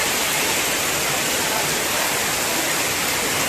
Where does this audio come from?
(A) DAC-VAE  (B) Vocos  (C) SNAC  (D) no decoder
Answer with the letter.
D